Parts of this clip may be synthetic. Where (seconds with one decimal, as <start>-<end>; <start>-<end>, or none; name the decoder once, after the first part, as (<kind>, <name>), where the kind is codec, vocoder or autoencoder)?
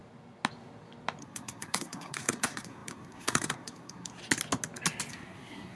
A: 1.2-4.2 (codec, SNAC); 5.1-5.8